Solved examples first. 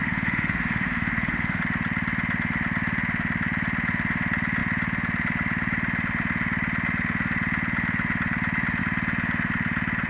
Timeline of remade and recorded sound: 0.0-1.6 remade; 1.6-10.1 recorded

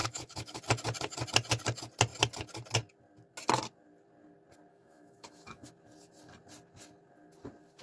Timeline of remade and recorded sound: 0.0-0.6 remade; 0.6-4.7 recorded; 4.7-5.7 remade; 5.7-7.8 recorded

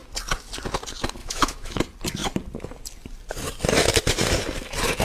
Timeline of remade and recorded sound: 0.0-1.2 recorded; 1.2-1.8 remade; 1.8-5.0 recorded

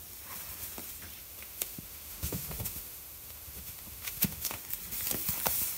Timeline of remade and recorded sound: 0.0-1.2 recorded; 1.2-4.6 remade; 4.6-5.8 recorded